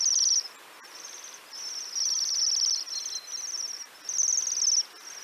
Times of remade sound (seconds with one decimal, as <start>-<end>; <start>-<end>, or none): none